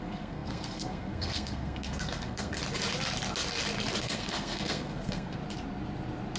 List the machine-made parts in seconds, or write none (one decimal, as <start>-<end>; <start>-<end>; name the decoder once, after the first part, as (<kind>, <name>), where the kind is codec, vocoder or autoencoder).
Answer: 0.0-2.6 (codec, SNAC); 4.0-5.4